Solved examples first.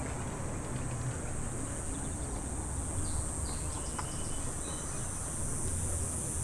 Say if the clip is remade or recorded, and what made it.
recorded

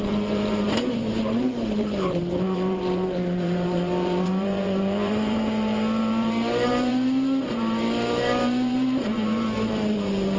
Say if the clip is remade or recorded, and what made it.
remade, vocoder, BigVGAN v2